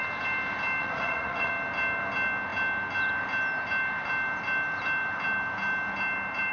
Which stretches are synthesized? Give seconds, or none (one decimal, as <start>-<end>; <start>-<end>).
0.8-1.5